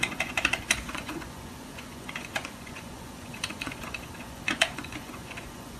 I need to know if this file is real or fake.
fake